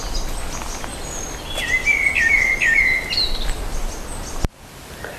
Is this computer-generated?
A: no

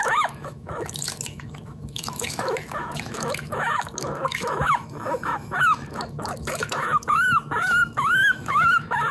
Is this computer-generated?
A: yes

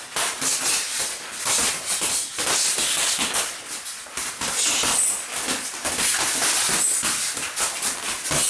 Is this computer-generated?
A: no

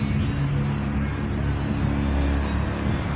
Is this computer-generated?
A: no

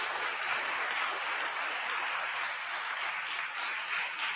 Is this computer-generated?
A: no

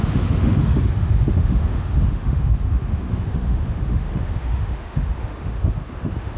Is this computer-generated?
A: yes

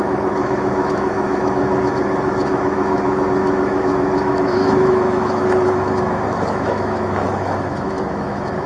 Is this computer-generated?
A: yes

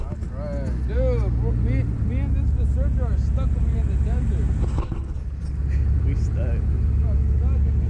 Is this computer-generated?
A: no